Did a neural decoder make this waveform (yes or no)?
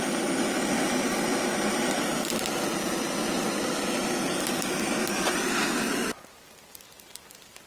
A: no